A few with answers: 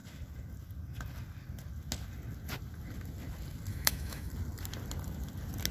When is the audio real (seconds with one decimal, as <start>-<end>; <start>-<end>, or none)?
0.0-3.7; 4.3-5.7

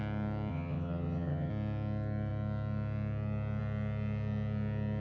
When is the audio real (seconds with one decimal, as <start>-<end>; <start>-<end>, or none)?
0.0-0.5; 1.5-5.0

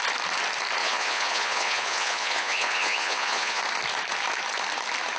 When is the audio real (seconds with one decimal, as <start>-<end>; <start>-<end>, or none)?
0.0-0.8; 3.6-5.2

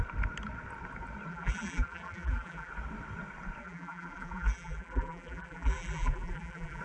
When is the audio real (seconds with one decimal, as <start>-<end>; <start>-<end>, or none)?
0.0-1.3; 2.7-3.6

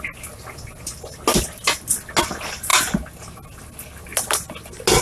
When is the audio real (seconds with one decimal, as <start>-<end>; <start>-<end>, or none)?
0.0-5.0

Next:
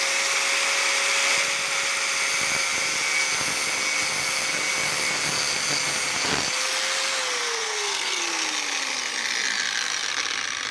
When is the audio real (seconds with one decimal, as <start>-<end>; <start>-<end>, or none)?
0.0-7.4; 8.2-10.7

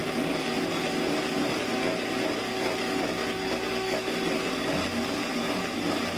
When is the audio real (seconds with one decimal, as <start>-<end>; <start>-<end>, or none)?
0.0-6.2

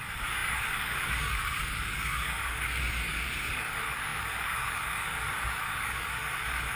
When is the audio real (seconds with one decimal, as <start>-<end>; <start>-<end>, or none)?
none